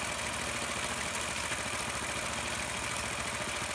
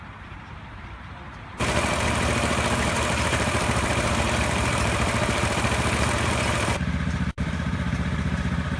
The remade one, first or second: second